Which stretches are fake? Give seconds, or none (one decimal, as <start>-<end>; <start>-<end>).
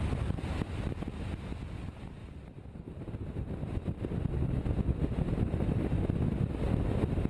none